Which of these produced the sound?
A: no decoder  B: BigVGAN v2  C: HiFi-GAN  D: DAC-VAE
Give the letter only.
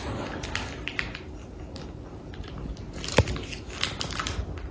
A